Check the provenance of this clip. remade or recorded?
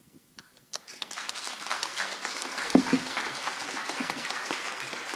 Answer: remade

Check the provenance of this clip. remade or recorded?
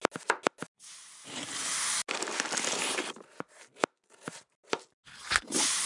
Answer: recorded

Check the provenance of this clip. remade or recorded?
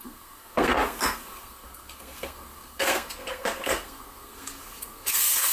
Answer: remade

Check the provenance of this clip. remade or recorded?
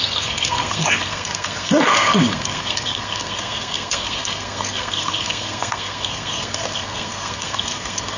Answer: remade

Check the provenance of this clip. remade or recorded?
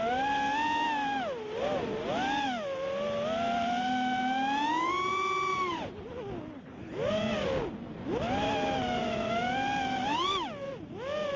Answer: recorded